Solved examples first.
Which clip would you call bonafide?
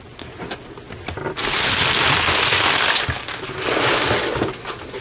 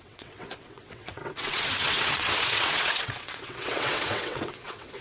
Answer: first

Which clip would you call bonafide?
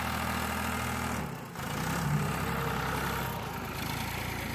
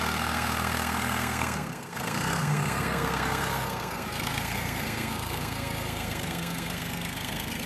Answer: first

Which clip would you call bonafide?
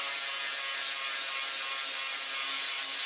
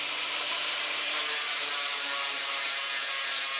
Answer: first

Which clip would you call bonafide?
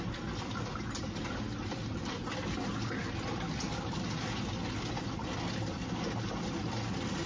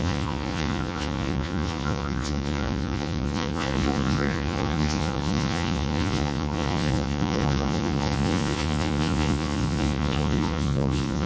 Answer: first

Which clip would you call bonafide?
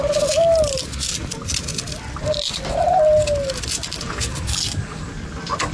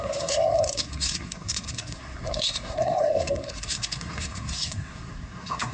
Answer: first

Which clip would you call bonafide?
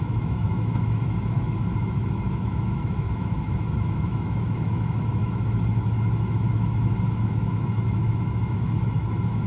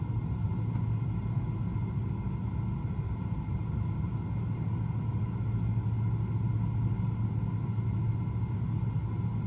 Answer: second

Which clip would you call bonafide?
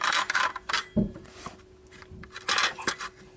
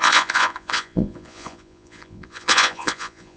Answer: first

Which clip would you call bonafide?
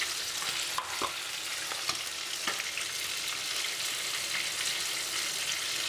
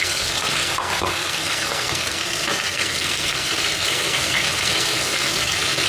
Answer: first